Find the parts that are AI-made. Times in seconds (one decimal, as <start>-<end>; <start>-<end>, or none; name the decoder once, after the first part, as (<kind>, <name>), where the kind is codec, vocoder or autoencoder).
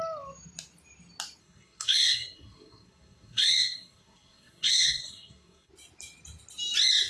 1.4-5.7 (codec, SNAC)